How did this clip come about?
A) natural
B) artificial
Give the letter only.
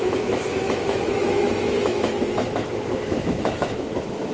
B